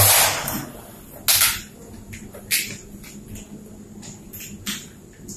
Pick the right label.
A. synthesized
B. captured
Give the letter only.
B